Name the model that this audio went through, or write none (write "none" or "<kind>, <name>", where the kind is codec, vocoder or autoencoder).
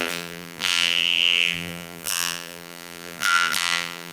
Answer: vocoder, BigVGAN v2